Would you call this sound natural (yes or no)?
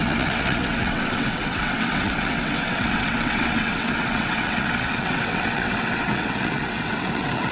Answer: no